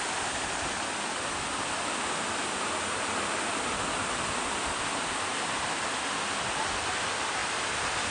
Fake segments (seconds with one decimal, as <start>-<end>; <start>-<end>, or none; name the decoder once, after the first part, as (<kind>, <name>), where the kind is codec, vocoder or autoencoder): none